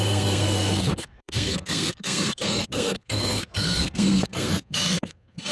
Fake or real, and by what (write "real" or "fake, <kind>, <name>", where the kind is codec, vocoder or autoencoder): fake, codec, SNAC